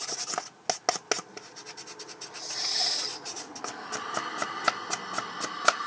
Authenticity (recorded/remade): recorded